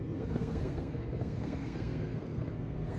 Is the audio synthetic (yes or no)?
yes